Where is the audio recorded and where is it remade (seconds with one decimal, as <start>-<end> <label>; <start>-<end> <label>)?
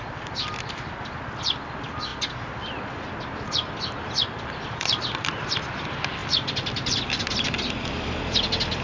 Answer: 0.0-8.8 recorded